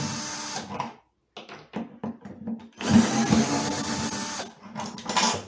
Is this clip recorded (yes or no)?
yes